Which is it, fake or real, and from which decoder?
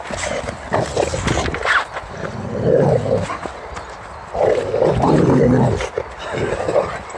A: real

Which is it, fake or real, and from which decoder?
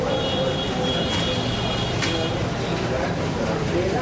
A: real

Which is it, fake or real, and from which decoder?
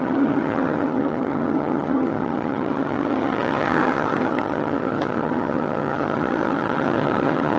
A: fake, vocoder, HiFi-GAN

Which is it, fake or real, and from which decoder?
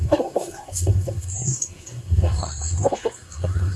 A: fake, codec, SNAC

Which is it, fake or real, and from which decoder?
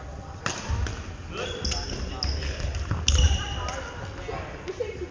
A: real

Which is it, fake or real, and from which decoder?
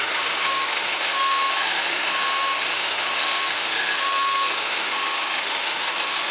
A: fake, autoencoder, DAC-VAE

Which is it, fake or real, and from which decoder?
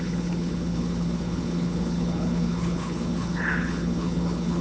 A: fake, codec, HILCodec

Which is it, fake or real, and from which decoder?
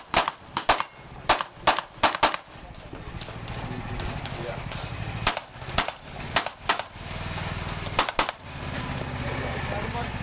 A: real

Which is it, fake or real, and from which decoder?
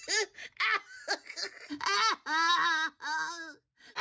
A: real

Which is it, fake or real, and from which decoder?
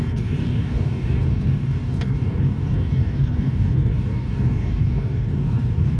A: fake, codec, DAC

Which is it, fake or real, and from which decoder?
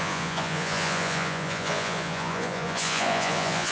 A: fake, vocoder, Vocos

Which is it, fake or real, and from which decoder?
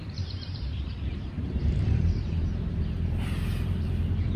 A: fake, vocoder, BigVGAN v2